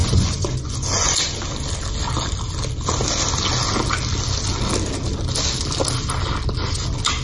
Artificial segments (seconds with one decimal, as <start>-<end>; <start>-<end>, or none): 0.0-1.1